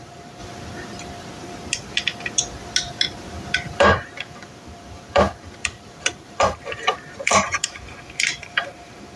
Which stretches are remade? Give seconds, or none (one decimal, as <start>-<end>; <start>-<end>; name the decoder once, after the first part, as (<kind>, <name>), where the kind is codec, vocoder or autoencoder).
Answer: 0.0-0.4 (vocoder, BigVGAN v2); 3.8-9.2